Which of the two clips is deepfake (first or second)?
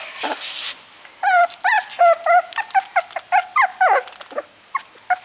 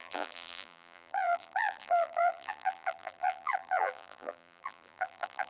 second